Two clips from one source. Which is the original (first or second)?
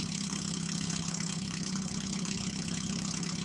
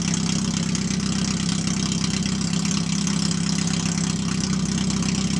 second